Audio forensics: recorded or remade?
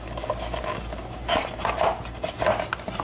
recorded